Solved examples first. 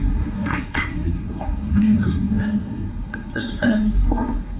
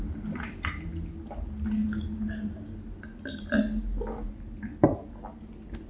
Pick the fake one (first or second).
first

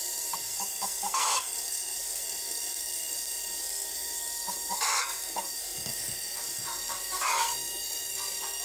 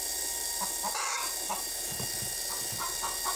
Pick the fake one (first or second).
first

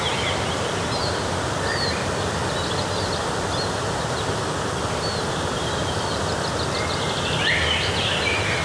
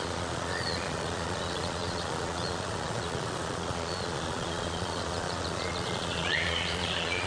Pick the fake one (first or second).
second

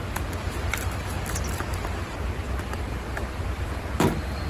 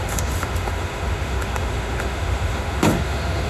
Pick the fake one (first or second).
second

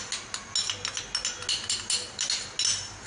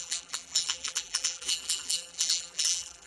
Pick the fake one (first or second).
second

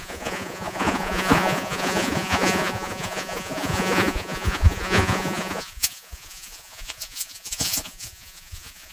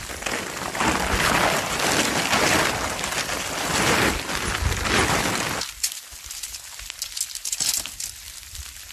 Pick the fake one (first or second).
first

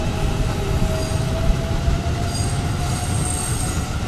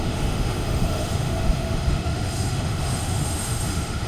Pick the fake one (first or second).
second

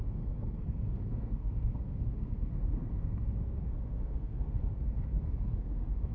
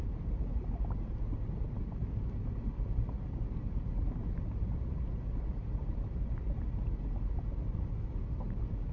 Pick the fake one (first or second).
first